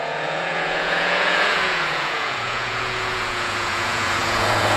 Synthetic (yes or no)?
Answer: yes